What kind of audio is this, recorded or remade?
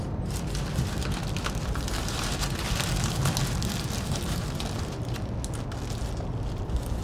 recorded